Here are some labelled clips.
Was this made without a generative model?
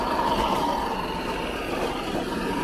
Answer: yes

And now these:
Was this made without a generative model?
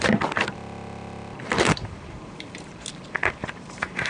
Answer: no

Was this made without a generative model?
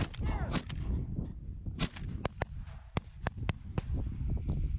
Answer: yes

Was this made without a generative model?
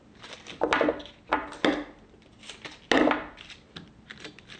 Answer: yes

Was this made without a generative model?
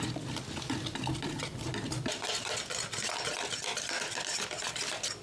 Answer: yes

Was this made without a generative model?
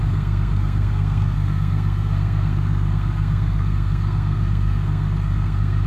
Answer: no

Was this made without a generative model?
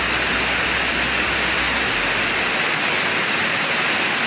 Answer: yes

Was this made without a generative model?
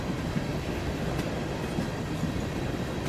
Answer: yes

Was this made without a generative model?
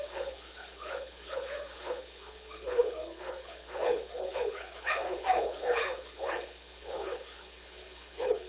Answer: no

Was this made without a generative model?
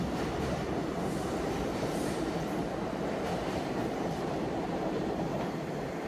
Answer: no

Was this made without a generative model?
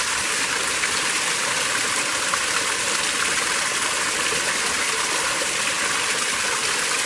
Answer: yes